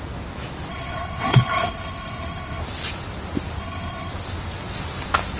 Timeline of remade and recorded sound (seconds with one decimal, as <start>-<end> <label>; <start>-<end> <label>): 0.0-0.7 recorded; 0.7-2.6 remade; 2.6-3.6 recorded; 3.6-4.1 remade; 4.1-5.4 recorded